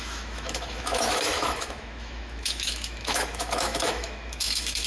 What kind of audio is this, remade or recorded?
remade